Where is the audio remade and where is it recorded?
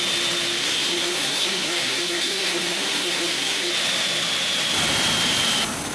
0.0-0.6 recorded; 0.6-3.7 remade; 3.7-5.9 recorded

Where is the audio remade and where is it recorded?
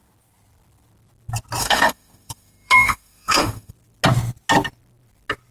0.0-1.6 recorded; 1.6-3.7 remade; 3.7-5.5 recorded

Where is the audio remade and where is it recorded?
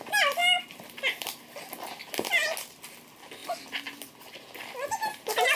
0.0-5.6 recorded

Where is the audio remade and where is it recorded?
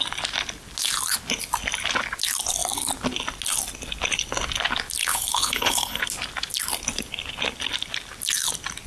0.0-5.0 recorded; 5.0-6.0 remade; 6.0-8.9 recorded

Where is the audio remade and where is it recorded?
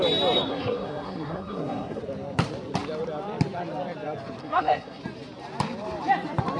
0.0-0.5 recorded; 0.5-2.0 remade; 2.0-4.4 recorded; 4.4-5.0 remade; 5.0-6.6 recorded